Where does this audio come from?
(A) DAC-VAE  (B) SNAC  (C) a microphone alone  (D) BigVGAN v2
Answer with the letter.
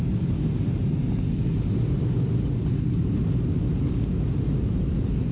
C